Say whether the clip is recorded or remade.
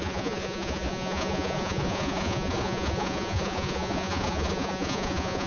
remade